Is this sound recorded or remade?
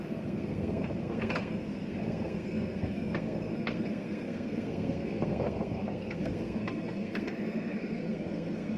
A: remade